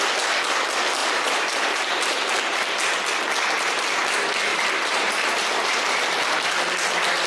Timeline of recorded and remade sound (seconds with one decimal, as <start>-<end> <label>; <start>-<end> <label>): 0.0-1.0 recorded; 1.0-2.6 remade; 2.6-4.5 recorded; 4.5-6.0 remade; 6.0-7.3 recorded